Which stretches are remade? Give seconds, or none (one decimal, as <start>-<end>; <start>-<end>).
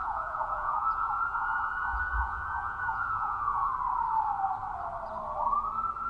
0.0-3.7